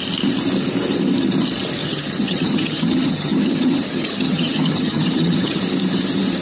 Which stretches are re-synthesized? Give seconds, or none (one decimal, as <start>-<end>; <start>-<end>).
1.8-5.6